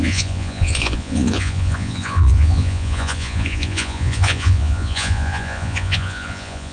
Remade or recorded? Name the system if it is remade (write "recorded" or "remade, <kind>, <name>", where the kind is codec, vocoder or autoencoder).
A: remade, vocoder, Vocos